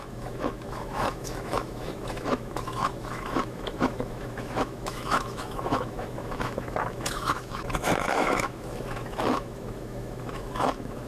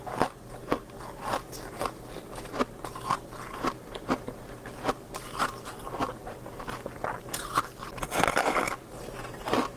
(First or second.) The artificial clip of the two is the first